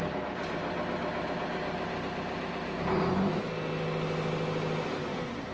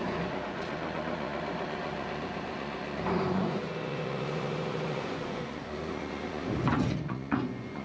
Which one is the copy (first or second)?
second